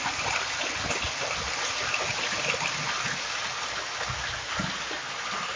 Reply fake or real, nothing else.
real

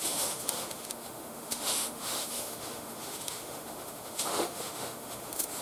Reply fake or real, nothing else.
fake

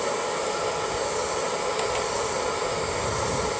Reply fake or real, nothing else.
real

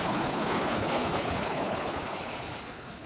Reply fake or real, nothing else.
fake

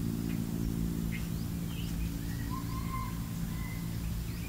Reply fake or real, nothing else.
real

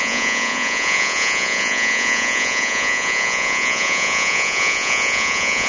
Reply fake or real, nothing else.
fake